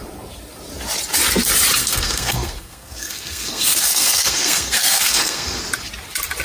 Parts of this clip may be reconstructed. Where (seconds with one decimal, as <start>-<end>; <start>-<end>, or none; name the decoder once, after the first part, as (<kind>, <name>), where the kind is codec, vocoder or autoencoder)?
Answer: 1.8-5.6 (codec, SNAC)